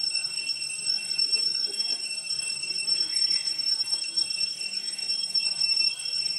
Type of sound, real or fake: fake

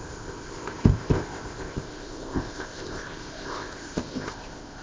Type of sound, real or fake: fake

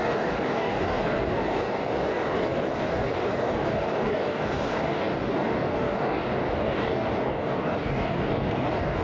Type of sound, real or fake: fake